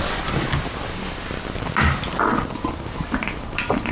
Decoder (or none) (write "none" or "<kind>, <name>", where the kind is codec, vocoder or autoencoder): none